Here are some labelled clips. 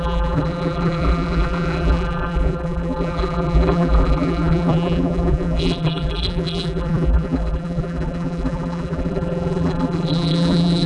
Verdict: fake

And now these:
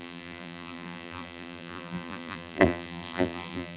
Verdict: fake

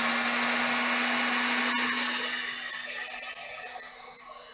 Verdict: real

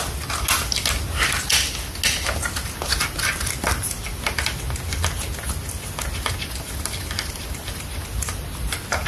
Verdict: real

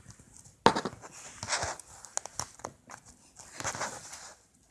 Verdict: real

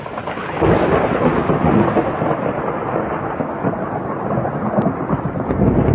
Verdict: real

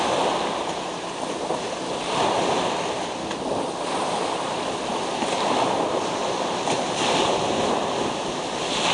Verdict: real